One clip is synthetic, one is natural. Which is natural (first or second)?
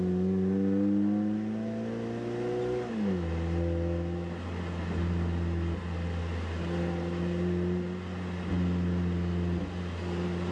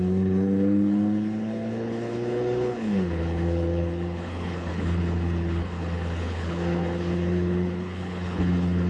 first